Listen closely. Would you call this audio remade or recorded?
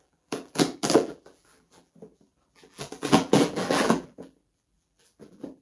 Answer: remade